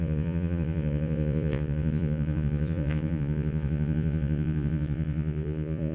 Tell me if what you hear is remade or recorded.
remade